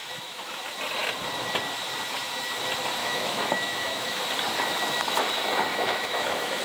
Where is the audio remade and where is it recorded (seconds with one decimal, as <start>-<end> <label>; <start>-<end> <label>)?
0.0-0.6 remade; 0.6-3.0 recorded; 3.0-4.2 remade; 4.2-5.7 recorded; 5.7-6.6 remade